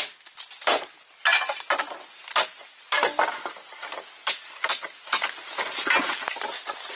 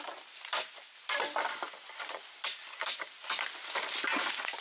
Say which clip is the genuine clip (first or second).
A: first